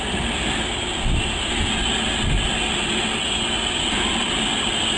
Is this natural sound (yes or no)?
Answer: yes